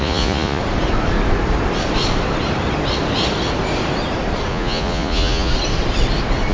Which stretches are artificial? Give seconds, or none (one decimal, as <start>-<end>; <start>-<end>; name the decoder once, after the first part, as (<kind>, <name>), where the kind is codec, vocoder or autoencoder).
0.0-0.6 (vocoder, Vocos); 4.5-5.5